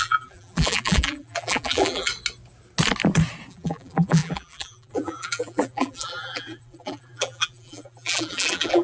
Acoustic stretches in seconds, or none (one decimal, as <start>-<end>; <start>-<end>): 2.1-3.5